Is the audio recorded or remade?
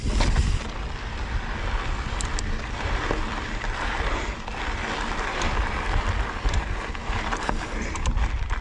recorded